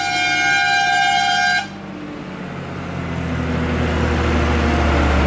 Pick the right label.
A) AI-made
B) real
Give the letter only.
B